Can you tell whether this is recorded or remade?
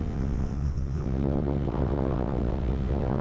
remade